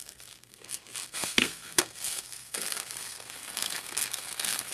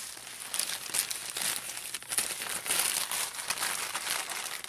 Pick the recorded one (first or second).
second